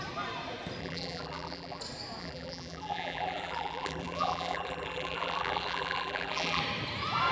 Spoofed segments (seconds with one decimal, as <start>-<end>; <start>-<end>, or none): 0.8-1.8; 2.2-6.6